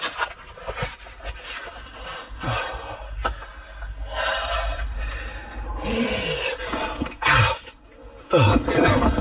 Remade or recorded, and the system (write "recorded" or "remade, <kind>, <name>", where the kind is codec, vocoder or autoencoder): recorded